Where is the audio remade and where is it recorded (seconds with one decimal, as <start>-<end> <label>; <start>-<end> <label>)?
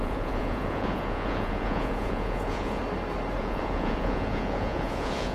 0.0-2.8 remade; 2.8-3.4 recorded; 3.4-5.3 remade